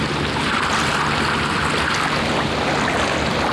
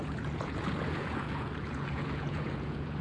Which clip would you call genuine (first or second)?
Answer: first